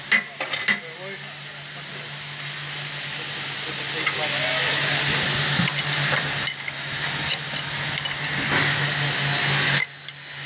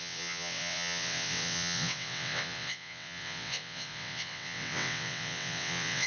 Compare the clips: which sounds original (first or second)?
first